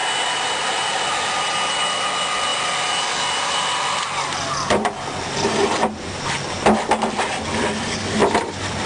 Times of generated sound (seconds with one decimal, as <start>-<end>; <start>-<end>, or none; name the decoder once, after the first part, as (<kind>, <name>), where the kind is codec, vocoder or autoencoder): 8.2-8.9 (vocoder, BigVGAN v2)